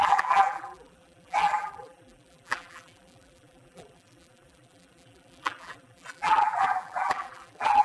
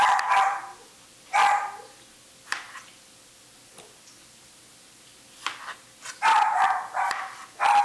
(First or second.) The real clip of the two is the second